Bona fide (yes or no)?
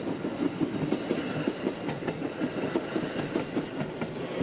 yes